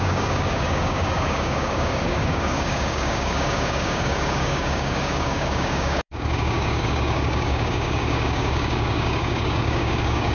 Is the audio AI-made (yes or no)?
yes